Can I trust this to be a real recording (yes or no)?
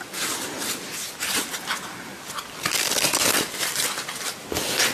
no